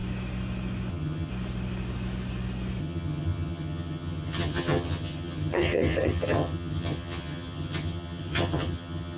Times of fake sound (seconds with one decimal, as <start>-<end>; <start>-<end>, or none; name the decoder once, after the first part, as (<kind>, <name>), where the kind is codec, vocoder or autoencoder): 0.9-1.3 (vocoder, HiFi-GAN); 2.8-9.2